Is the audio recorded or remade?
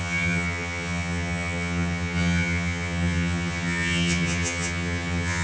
remade